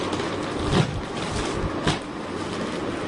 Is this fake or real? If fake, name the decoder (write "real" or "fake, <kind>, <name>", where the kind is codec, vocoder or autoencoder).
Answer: real